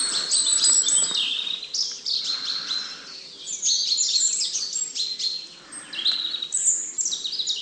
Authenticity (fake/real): real